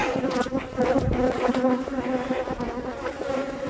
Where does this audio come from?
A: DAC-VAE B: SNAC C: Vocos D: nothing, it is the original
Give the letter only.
D